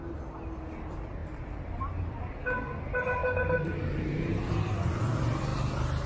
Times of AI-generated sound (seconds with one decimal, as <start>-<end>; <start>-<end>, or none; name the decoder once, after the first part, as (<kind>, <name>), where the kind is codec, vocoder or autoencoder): 3.2-4.7 (vocoder, BigVGAN v2); 5.5-6.1